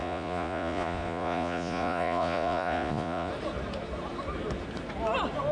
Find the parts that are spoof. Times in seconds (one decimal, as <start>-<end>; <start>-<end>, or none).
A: 0.0-3.3